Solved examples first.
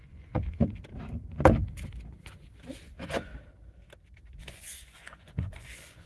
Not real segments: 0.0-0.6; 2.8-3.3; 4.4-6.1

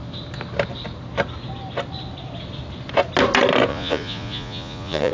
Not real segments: 3.7-5.1

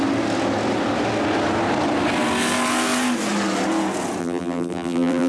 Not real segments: 4.2-5.3

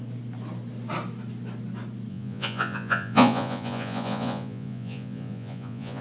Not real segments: 2.1-6.0

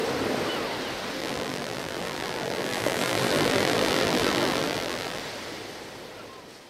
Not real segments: 1.2-5.2